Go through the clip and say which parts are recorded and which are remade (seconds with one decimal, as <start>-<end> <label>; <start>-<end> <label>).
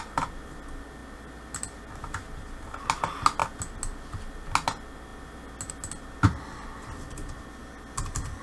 0.0-8.4 recorded